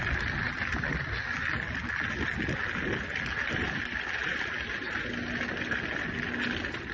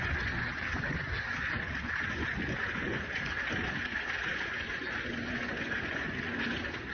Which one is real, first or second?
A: first